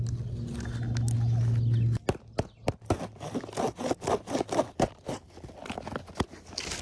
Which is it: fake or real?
real